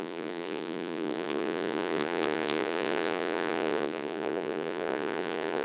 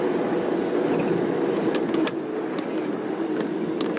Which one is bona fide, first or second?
second